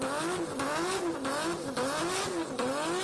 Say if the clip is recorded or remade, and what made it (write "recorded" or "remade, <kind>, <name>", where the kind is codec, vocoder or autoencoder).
recorded